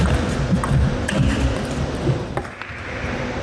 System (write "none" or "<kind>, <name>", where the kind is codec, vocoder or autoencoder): none